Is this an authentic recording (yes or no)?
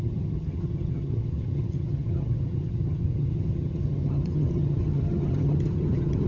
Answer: no